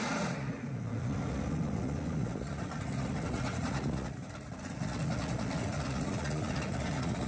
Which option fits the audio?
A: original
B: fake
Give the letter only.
B